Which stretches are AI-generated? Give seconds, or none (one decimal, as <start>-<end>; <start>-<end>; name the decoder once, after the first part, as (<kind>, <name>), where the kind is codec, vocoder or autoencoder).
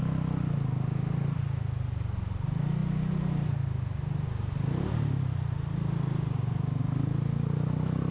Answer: none